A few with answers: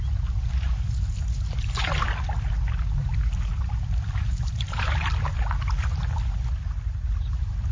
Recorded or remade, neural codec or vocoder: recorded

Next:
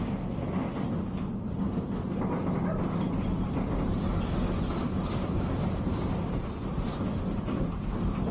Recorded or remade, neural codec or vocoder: recorded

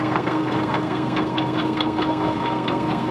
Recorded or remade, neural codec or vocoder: remade, codec, SNAC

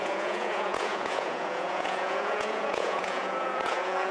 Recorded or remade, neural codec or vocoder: remade, vocoder, Vocos